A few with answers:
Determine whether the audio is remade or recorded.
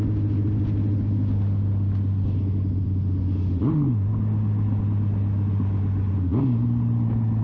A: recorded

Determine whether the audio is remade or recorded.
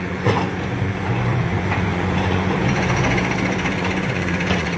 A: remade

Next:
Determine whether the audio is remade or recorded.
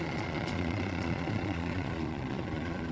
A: remade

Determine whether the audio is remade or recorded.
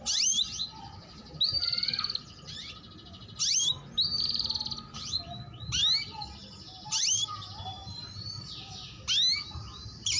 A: recorded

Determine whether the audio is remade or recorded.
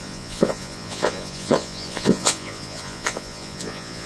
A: remade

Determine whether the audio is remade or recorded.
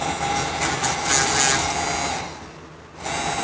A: recorded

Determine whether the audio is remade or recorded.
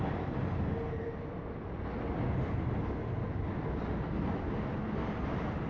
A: recorded